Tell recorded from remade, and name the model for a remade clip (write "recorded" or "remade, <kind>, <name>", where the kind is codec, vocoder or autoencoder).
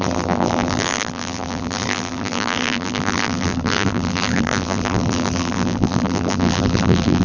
remade, vocoder, BigVGAN v2